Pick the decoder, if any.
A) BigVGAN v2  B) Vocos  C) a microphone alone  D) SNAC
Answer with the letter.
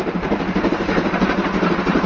C